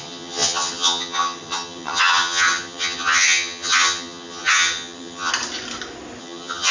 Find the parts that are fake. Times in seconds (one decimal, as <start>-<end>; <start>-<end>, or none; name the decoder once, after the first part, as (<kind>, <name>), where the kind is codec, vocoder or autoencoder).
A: 0.0-5.3 (vocoder, HiFi-GAN); 6.2-6.7